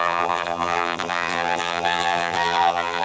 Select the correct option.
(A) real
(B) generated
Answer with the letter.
B